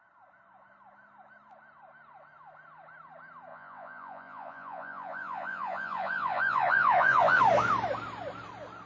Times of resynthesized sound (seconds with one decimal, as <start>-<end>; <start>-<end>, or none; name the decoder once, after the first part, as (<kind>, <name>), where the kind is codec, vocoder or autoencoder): 3.5-7.4 (vocoder, Vocos)